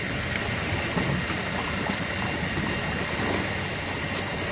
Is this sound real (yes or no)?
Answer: yes